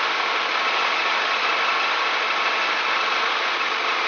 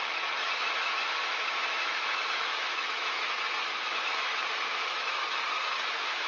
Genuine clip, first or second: first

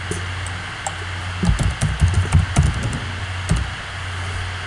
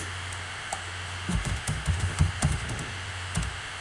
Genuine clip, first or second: first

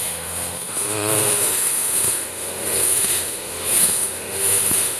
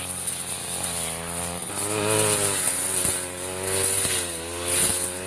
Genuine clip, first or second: second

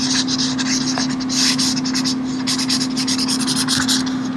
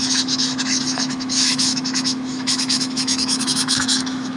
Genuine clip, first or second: first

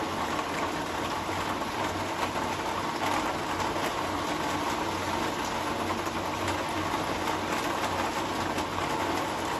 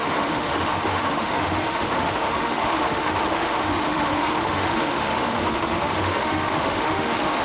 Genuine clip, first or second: first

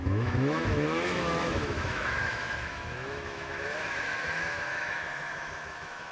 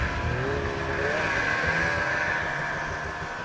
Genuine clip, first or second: second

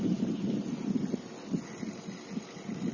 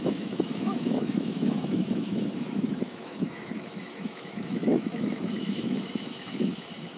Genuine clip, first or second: first